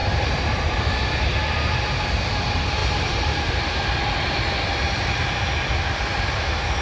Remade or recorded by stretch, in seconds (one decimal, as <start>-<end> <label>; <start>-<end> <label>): 0.0-1.8 remade; 1.8-2.8 recorded; 2.8-3.5 remade; 3.5-6.8 recorded